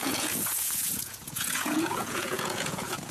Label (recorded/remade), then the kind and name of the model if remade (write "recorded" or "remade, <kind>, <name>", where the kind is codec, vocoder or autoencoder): remade, vocoder, Vocos